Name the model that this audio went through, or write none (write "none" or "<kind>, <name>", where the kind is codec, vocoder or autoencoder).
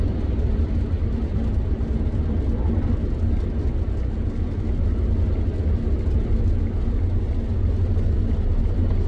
none